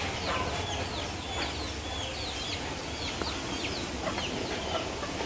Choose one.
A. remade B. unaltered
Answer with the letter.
B